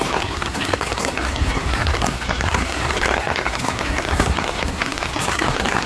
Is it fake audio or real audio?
fake